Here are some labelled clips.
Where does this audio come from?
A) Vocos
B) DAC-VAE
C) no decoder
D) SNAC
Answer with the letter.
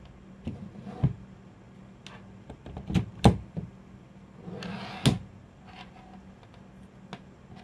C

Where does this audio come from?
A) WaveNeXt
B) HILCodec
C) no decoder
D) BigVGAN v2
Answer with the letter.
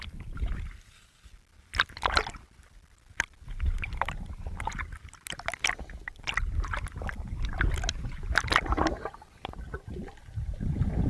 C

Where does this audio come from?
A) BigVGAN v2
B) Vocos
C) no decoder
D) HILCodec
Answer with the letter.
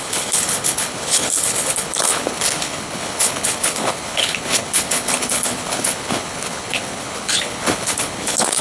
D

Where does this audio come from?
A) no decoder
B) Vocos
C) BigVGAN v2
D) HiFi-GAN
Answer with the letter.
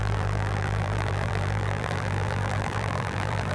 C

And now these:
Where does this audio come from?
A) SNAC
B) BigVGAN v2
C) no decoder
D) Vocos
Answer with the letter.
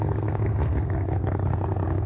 A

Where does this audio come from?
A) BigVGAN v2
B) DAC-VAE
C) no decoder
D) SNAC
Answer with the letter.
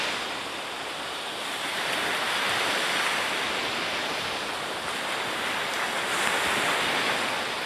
C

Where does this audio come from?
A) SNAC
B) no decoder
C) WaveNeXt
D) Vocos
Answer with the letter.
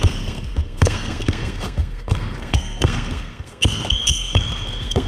A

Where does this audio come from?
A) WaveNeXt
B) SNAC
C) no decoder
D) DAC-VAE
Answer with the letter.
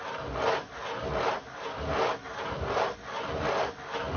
C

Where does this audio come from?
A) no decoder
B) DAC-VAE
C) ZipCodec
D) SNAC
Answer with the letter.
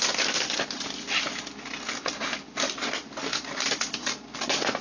A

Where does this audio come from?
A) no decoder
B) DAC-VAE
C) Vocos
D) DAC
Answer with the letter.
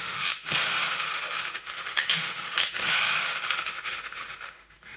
B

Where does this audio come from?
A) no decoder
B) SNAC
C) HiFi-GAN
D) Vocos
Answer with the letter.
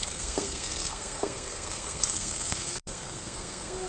B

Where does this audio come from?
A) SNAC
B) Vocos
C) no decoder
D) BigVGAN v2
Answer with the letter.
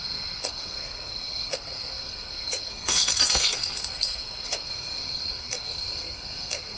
A